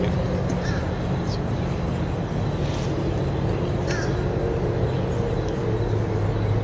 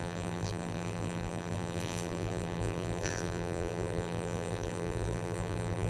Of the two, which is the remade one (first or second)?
second